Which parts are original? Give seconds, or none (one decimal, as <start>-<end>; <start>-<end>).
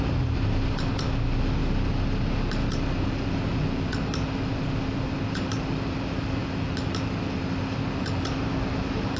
0.0-9.2